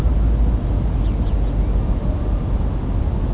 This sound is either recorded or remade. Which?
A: recorded